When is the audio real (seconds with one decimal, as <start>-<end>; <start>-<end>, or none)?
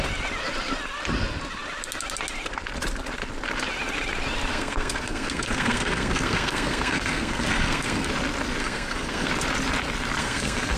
0.0-4.5; 8.1-8.6; 9.3-10.2